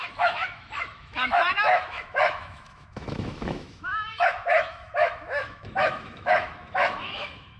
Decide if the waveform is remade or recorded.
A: remade